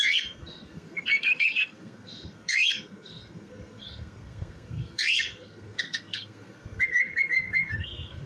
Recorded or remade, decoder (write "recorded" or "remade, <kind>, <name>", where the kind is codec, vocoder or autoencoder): remade, codec, SNAC